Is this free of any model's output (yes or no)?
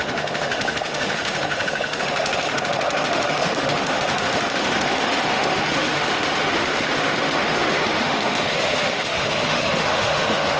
no